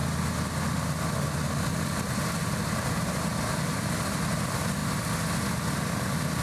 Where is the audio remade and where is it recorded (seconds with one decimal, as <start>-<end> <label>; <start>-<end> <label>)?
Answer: 0.0-3.8 recorded; 3.8-4.8 remade; 4.8-6.4 recorded